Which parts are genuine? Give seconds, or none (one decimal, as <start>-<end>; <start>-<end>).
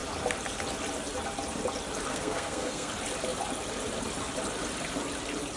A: 0.0-2.1; 2.9-5.6